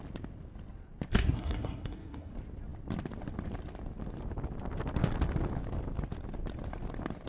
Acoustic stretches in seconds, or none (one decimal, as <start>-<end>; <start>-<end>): 0.0-1.1; 2.3-7.3